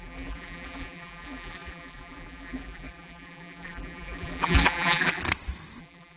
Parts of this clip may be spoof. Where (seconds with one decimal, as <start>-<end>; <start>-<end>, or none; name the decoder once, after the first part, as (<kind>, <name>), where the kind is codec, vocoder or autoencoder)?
0.0-5.2 (vocoder, BigVGAN v2); 5.8-6.2

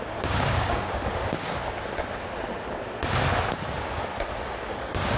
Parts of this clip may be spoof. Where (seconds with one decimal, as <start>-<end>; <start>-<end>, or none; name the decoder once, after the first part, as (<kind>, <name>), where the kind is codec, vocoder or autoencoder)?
0.0-1.2 (codec, DAC); 3.5-4.1; 4.7-5.2